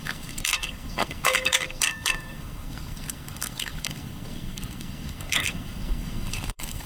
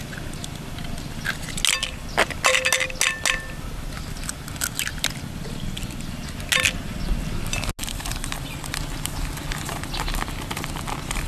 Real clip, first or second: second